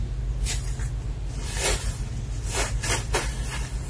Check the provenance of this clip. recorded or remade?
recorded